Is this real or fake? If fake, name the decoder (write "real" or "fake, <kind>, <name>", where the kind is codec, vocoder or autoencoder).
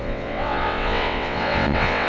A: fake, vocoder, WaveNeXt